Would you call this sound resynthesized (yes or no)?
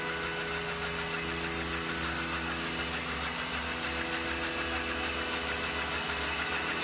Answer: no